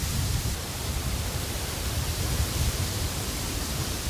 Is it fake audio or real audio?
fake